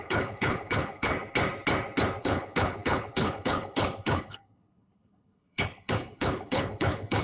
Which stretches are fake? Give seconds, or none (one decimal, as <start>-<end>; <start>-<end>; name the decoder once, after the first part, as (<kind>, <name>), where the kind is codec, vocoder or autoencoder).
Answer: 0.0-1.1 (codec, HILCodec); 2.2-7.2